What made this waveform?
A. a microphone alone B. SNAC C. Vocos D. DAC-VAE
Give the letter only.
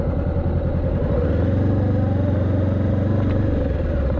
A